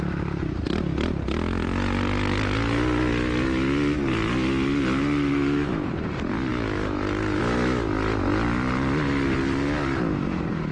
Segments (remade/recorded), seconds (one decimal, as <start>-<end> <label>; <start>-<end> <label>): 0.0-5.3 recorded; 5.3-5.9 remade; 5.9-6.5 recorded; 6.5-7.4 remade; 7.4-10.7 recorded